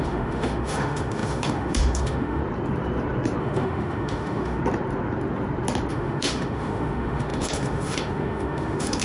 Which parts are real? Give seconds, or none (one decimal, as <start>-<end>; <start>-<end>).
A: 2.4-3.4; 4.6-5.9